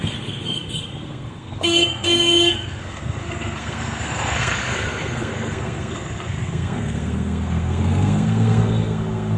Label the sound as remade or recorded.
remade